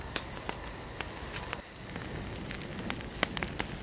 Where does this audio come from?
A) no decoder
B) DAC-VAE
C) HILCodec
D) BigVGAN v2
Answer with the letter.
A